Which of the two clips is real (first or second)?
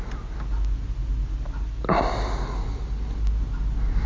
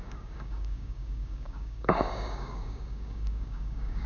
first